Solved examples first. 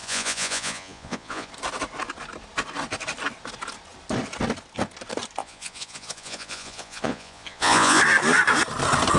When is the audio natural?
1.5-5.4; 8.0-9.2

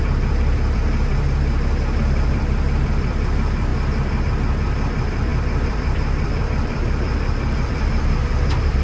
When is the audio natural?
1.1-2.0; 3.7-4.2

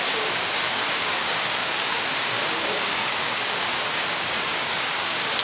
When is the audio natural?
none

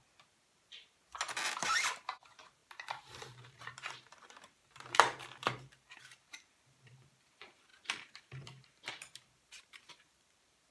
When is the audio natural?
0.0-1.6

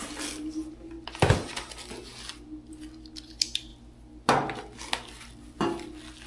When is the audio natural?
0.0-6.3

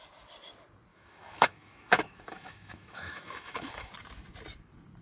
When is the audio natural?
0.0-0.9; 3.9-5.0

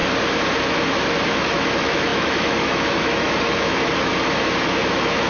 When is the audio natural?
0.0-0.6; 4.1-4.6